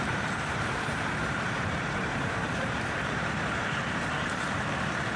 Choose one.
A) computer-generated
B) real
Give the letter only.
A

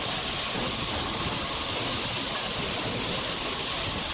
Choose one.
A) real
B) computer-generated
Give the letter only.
A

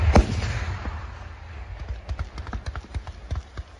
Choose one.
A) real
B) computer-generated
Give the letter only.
A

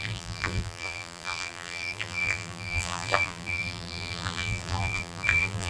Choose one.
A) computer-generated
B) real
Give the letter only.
A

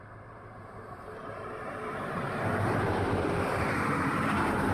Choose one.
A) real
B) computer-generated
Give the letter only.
B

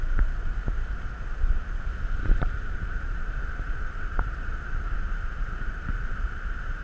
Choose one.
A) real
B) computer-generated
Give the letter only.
B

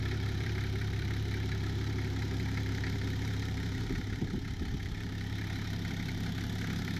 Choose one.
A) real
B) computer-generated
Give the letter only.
B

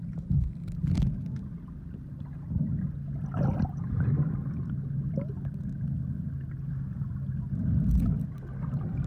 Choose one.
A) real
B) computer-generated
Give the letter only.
A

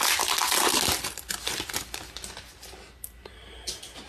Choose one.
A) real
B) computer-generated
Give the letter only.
A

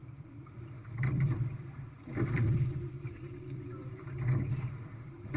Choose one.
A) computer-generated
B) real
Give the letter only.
A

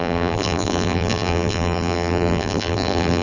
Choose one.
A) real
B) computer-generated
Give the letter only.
B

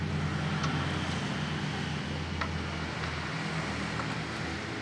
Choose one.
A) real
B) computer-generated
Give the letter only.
A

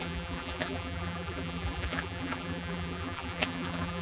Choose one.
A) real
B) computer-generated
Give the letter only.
B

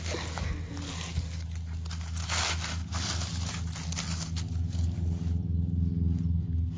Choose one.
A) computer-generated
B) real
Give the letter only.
B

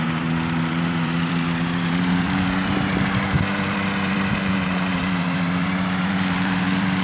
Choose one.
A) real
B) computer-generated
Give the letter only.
B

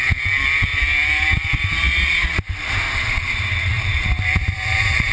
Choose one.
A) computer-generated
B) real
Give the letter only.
A